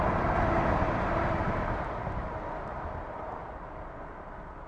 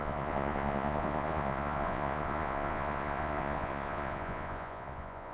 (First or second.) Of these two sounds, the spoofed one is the second